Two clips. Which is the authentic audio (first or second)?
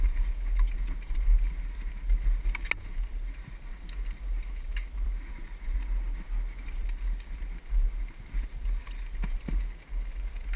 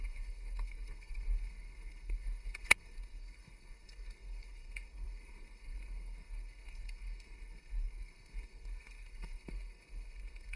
first